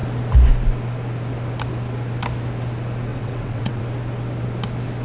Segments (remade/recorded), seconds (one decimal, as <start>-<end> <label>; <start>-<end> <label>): 0.0-3.1 recorded; 3.1-3.8 remade; 3.8-5.0 recorded